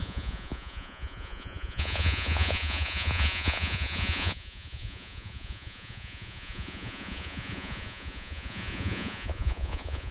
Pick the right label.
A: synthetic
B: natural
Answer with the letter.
A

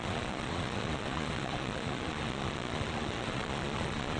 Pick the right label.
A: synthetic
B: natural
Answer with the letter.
A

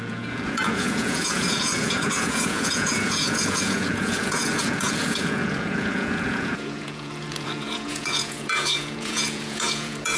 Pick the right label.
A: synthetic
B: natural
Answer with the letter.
A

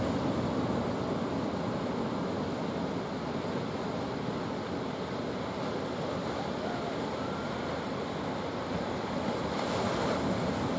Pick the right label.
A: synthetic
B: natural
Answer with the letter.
B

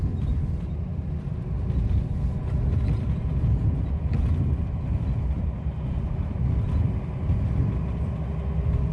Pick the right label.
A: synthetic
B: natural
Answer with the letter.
B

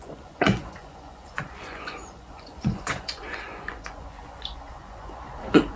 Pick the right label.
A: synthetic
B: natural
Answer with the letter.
A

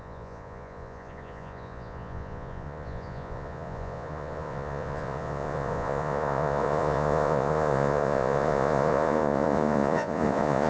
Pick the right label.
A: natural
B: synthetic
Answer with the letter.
B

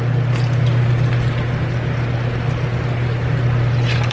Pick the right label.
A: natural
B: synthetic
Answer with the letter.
A